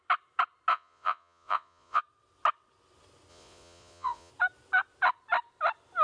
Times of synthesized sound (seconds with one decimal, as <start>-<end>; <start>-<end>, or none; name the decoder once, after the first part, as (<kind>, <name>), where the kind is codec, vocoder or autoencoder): 0.7-2.0 (vocoder, Vocos); 3.3-4.3